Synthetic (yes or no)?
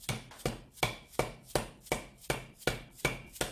no